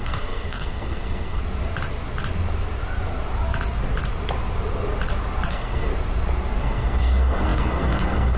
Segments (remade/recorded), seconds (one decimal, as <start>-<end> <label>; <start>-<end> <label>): 0.0-1.4 remade; 1.4-5.5 recorded; 5.5-5.9 remade; 5.9-6.6 recorded; 6.6-8.4 remade